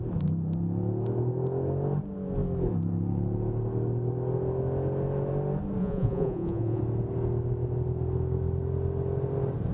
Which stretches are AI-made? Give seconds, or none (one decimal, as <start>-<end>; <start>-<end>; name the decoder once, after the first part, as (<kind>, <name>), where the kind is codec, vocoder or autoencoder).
5.8-6.8 (vocoder, Vocos)